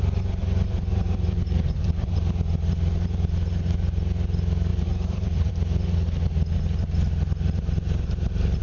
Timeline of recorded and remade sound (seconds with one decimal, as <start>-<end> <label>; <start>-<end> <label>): 0.0-0.4 recorded; 0.4-2.2 remade; 2.2-4.7 recorded; 4.7-5.5 remade; 5.5-8.6 recorded